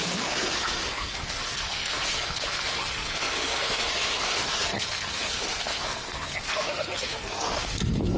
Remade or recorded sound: remade